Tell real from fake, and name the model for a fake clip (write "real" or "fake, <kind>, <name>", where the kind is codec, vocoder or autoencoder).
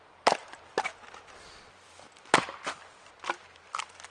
real